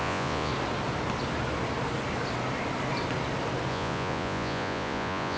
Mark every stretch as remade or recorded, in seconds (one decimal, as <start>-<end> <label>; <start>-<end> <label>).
0.0-0.5 remade; 0.5-3.7 recorded; 3.7-5.4 remade